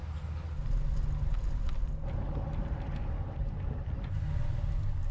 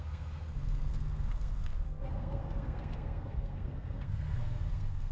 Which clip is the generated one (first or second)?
second